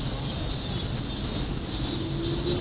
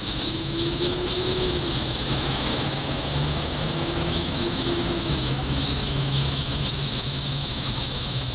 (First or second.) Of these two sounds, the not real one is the second